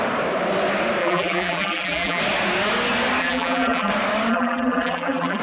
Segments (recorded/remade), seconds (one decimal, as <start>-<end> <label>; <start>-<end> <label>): 0.0-1.0 recorded; 1.0-2.2 remade; 2.2-3.2 recorded; 3.2-3.9 remade; 3.9-4.3 recorded; 4.3-5.4 remade